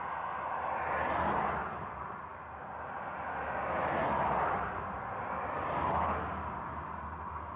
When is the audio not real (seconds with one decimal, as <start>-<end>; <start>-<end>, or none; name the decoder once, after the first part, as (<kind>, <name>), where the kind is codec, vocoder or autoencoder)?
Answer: none